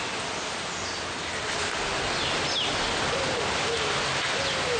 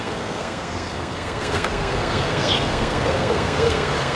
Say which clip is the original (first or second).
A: first